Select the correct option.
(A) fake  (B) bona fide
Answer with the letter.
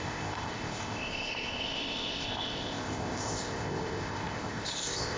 A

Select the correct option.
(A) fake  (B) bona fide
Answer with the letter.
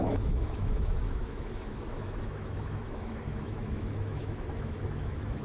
A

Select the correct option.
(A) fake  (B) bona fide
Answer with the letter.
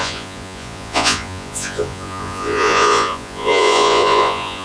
A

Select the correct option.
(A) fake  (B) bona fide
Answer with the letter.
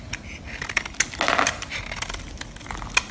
B